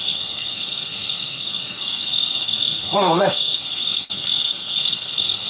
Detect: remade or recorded remade